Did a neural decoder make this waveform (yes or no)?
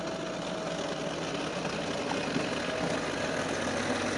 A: no